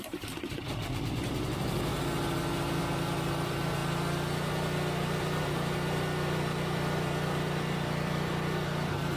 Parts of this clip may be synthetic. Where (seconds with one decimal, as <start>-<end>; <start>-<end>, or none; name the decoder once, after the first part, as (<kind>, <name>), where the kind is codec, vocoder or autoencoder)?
0.0-1.9 (vocoder, BigVGAN v2); 2.8-3.8; 5.4-9.2